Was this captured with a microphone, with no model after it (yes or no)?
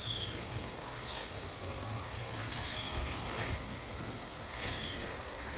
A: no